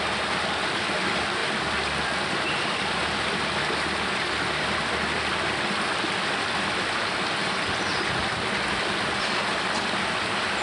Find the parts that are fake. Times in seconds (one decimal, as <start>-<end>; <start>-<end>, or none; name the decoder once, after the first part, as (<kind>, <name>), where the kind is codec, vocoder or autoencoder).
1.4-5.7 (vocoder, BigVGAN v2)